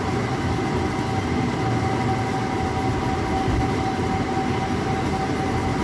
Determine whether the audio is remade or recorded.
recorded